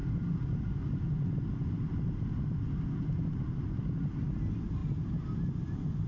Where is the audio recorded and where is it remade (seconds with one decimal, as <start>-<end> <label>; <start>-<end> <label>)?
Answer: 0.0-6.1 recorded